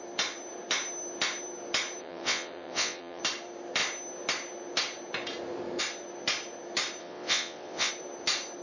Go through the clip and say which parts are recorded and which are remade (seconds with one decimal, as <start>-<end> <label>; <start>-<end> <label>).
0.0-2.0 recorded; 2.0-3.2 remade; 3.2-7.0 recorded; 7.0-7.9 remade; 7.9-8.6 recorded